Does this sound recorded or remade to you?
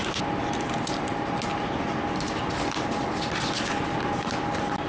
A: recorded